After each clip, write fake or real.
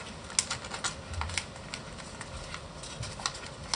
real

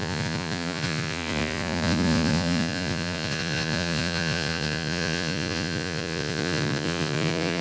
fake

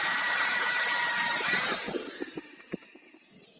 fake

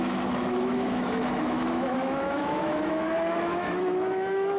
fake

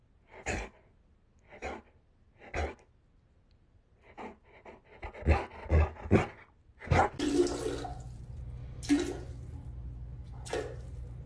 real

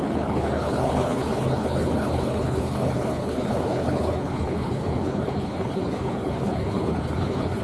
fake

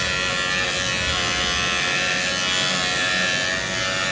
real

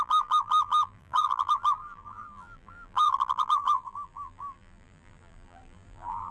fake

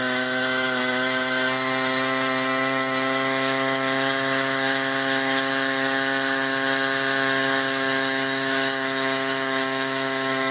fake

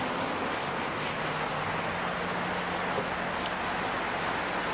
real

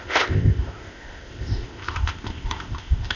fake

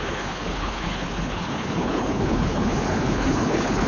fake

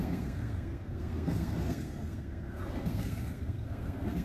fake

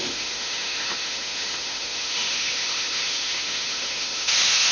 fake